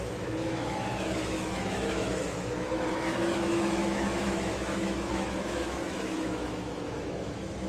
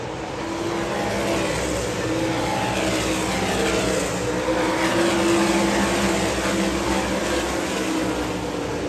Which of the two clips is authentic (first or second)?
second